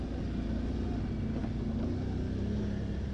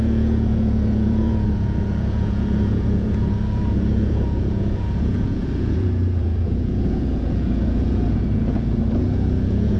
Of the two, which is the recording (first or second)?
first